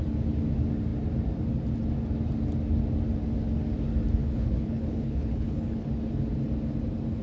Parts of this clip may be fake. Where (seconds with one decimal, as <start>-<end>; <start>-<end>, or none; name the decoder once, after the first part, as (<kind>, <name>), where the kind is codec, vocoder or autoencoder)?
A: 4.2-6.0 (codec, HILCodec)